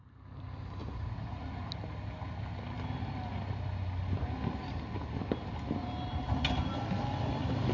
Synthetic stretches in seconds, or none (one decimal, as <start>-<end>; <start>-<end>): 0.8-1.5

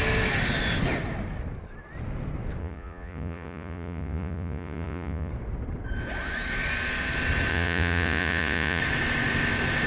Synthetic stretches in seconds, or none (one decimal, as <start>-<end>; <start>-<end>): 2.6-5.3; 7.5-8.8

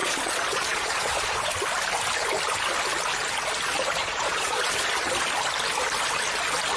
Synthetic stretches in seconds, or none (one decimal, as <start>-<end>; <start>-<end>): 0.0-1.5; 4.0-4.9